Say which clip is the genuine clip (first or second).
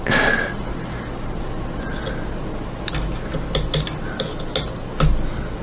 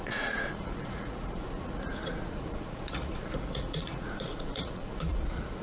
first